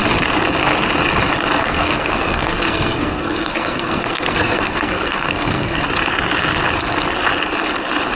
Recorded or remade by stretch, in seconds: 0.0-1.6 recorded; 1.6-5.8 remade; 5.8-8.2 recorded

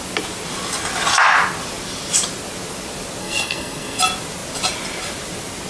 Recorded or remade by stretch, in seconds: 0.0-3.2 recorded; 3.2-4.0 remade; 4.0-5.7 recorded

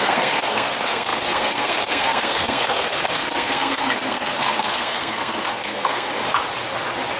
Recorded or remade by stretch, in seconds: 0.0-6.1 remade; 6.1-7.2 recorded

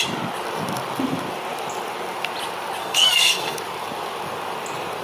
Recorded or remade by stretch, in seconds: 0.0-2.8 recorded; 2.8-3.6 remade; 3.6-5.0 recorded

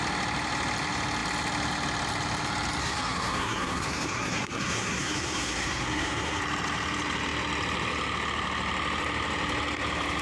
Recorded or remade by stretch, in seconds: 0.0-2.8 recorded; 2.8-6.4 remade; 6.4-10.2 recorded

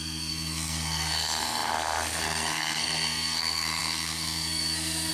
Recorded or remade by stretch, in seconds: 0.0-5.1 remade